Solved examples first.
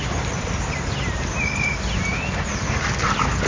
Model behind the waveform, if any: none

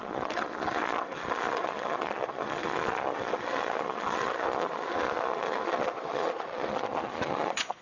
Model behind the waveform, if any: vocoder, Vocos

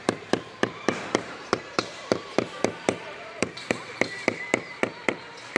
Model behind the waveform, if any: vocoder, BigVGAN v2